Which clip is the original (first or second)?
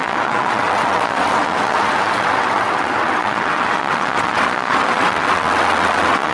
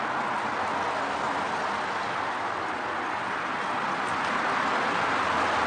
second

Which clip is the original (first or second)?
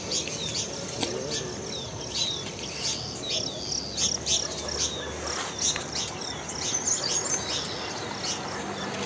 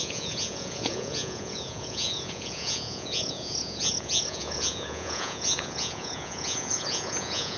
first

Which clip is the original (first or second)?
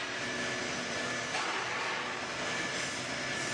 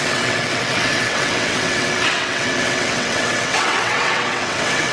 first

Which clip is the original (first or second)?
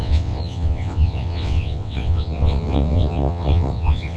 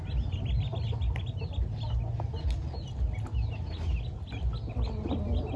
second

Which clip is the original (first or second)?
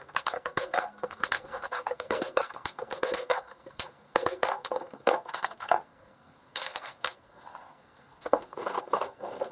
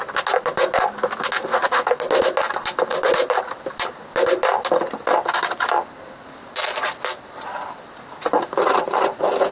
second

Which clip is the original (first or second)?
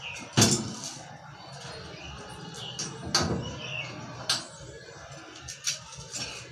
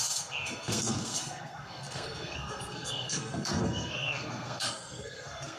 first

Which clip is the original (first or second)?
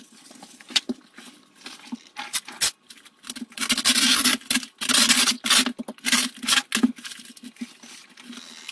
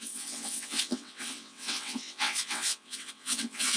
first